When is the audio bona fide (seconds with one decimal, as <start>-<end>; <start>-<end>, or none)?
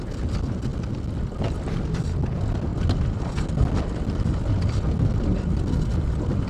0.0-6.5